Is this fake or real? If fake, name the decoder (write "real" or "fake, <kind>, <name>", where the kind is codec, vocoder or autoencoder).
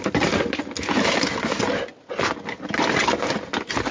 real